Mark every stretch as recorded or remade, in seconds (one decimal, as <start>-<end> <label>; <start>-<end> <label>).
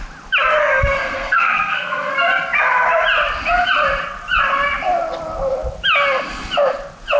0.0-0.6 recorded; 0.6-2.1 remade; 2.1-7.2 recorded